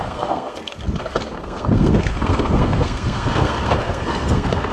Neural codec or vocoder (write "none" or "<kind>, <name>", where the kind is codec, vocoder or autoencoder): codec, SNAC